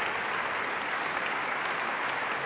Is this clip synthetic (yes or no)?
no